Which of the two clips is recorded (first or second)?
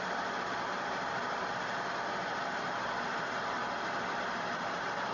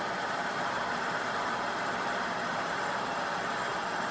first